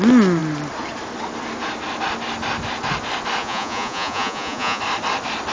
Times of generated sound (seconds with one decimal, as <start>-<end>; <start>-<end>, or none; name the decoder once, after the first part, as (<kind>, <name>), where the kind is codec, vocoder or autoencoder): 3.4-4.8 (vocoder, Vocos)